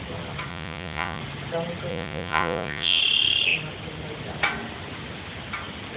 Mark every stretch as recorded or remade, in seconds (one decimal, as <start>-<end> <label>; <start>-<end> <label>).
0.0-0.5 recorded; 0.5-1.2 remade; 1.2-1.9 recorded; 1.9-3.0 remade; 3.0-6.0 recorded